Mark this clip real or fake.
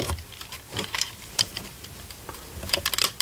fake